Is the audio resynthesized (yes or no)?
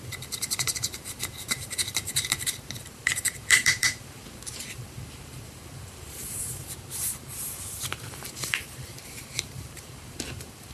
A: yes